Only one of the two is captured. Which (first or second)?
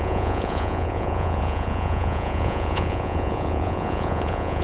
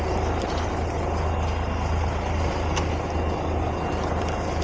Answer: second